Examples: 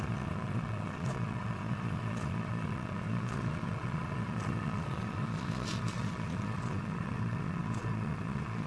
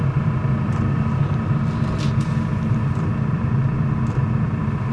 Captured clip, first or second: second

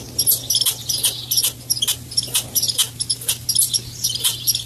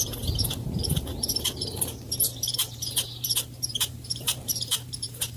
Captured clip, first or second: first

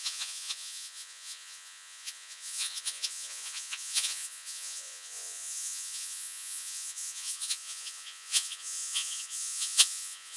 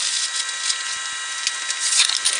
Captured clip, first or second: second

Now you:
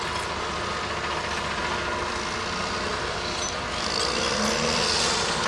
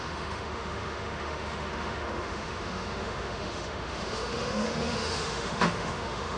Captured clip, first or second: first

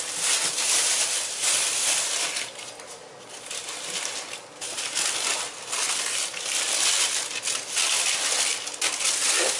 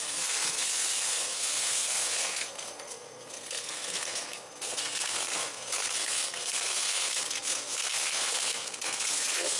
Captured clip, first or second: first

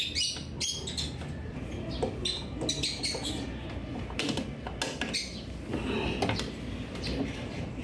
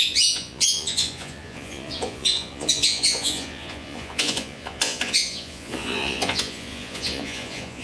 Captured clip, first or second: first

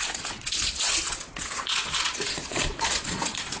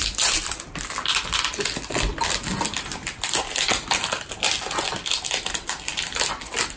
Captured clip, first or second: second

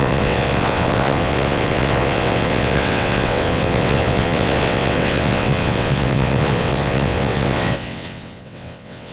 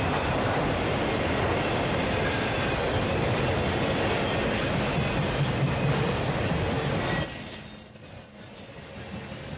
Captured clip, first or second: second